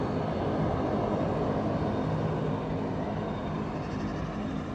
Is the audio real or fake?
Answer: real